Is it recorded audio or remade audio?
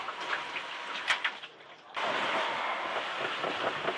recorded